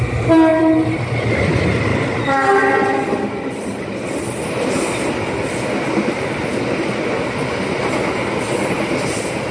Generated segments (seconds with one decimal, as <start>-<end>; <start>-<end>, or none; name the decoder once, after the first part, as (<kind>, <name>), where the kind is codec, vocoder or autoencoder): 0.5-1.1 (vocoder, BigVGAN v2)